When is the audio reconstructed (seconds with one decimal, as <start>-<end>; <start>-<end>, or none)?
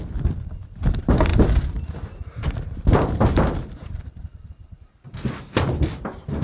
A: 0.0-4.2; 5.9-6.4